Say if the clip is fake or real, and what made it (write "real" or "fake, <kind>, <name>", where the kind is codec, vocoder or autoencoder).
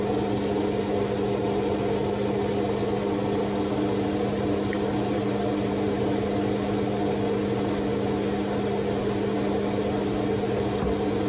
real